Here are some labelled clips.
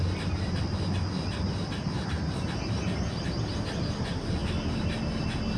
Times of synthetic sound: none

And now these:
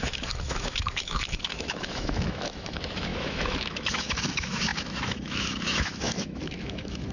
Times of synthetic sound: 0.0-7.1 (autoencoder, DAC-VAE)

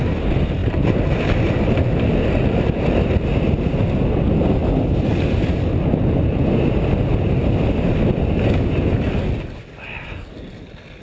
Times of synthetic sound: none

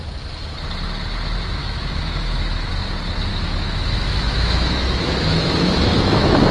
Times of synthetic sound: 1.6-2.7 (autoencoder, DAC-VAE); 3.3-6.5

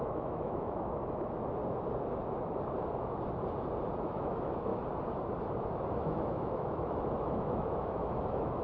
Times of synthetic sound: 0.0-1.6 (autoencoder, DAC-VAE); 4.0-4.7; 6.0-8.6

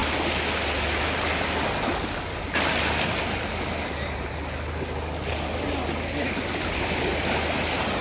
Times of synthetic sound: none